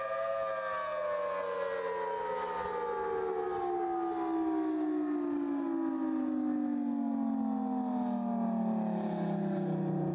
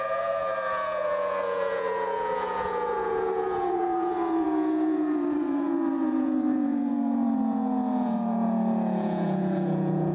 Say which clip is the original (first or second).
first